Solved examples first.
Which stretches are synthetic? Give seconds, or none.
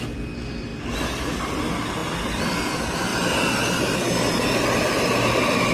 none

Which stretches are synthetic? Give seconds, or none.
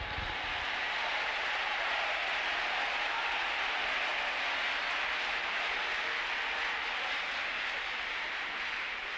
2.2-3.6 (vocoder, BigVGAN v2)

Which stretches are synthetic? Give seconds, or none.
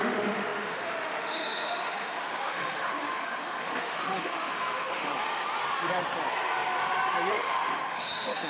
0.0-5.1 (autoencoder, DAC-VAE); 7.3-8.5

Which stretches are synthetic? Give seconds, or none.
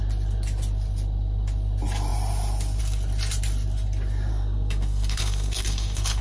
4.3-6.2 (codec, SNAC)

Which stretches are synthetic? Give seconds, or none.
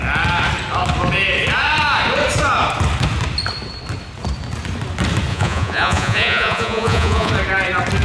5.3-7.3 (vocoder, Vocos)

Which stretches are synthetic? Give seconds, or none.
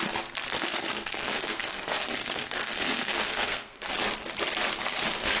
0.7-3.9 (codec, SNAC)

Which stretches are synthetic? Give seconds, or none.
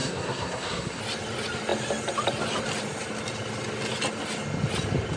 0.0-1.0 (codec, SNAC)